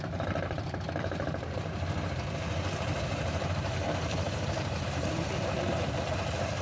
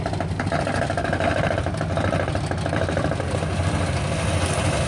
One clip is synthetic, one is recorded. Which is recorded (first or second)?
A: second